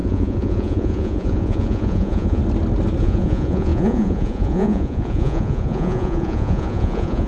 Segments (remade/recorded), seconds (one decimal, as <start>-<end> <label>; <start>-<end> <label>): 0.0-2.4 remade; 2.4-3.0 recorded; 3.0-7.3 remade